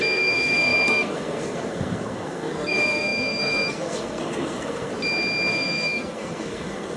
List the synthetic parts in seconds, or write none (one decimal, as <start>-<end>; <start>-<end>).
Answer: 0.0-4.9; 5.5-7.0